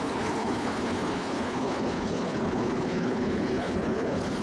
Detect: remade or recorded remade